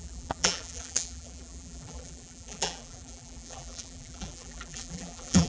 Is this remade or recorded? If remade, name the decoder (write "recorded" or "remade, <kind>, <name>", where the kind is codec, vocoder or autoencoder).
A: remade, vocoder, BigVGAN v2